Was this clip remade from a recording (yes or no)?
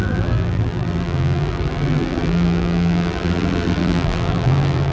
yes